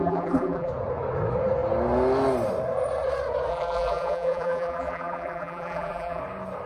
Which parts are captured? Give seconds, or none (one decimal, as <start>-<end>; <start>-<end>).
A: 0.7-3.5; 6.2-6.7